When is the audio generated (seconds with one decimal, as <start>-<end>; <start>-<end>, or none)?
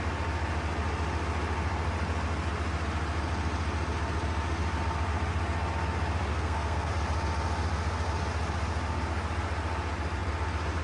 6.3-6.9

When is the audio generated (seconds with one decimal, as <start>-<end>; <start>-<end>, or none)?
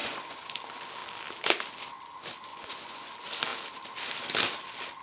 0.0-0.5; 2.5-3.1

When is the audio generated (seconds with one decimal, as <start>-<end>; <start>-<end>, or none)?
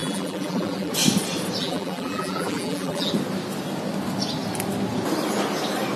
0.0-0.9; 1.6-3.1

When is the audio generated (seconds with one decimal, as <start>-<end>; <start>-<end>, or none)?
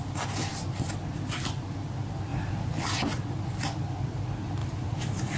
4.6-5.4